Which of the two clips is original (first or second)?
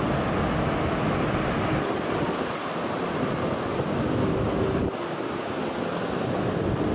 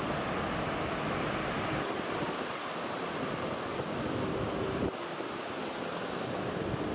first